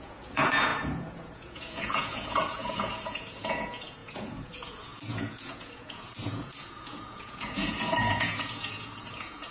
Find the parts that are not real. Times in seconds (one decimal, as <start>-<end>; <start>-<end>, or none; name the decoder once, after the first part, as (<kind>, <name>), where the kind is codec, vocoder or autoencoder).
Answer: 0.0-9.5 (vocoder, Vocos)